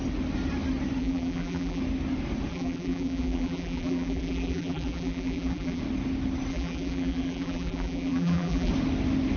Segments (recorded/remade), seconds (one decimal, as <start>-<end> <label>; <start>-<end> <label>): 0.0-1.0 recorded; 1.0-1.8 remade; 1.8-2.5 recorded; 2.5-5.8 remade; 5.8-6.5 recorded; 6.5-8.7 remade; 8.7-9.4 recorded